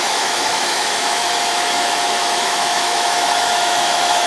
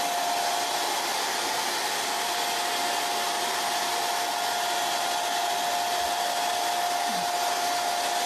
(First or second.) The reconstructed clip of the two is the first